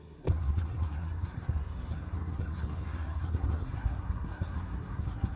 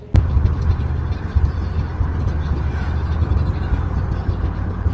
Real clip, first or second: second